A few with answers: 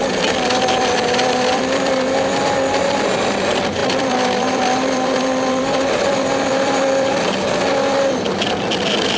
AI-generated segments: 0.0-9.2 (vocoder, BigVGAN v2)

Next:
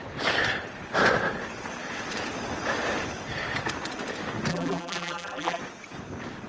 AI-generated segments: 4.5-5.6 (vocoder, BigVGAN v2)

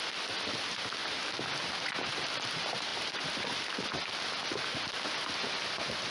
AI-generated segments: none

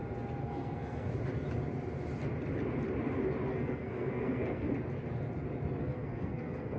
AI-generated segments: 0.4-1.1 (codec, SNAC); 3.5-4.7; 5.8-6.8

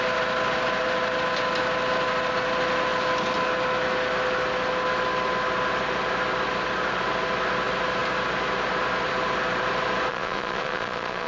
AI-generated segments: 10.1-11.3 (vocoder, Vocos)

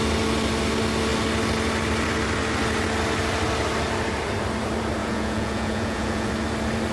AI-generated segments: 5.0-6.3 (vocoder, Vocos)

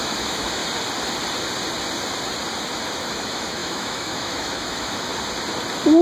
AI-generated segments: 0.0-0.6 (autoencoder, DAC-VAE); 2.9-5.1